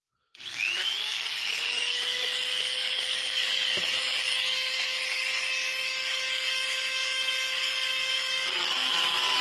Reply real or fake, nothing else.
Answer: fake